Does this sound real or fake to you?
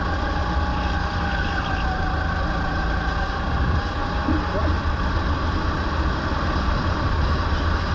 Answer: real